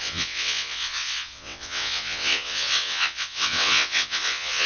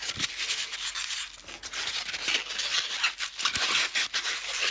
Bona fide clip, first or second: second